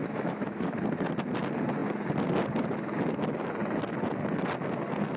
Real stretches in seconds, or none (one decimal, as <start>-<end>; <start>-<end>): 0.8-5.2